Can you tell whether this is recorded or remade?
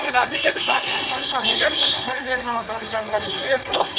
remade